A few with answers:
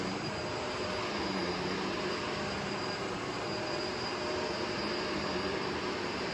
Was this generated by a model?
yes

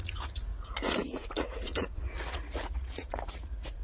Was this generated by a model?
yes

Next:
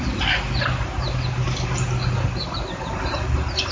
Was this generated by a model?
no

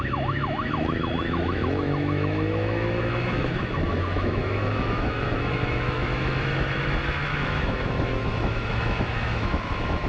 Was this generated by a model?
yes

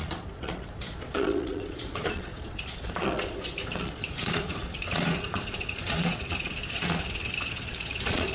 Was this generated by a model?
yes